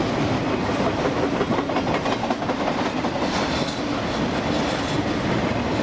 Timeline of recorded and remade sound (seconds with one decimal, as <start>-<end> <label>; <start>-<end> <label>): 0.0-5.8 recorded